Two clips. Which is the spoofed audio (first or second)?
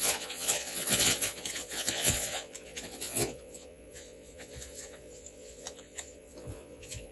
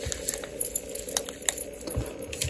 first